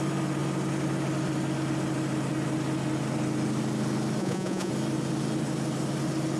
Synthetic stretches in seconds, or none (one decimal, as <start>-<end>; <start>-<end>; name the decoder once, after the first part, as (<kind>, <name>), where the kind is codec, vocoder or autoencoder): 4.2-4.7 (vocoder, Vocos)